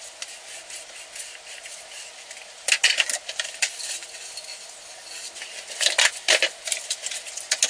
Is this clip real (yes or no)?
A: yes